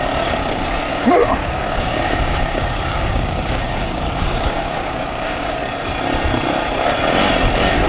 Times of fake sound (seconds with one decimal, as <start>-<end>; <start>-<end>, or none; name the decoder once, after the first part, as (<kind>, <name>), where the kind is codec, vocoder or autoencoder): 0.9-5.6 (codec, DAC)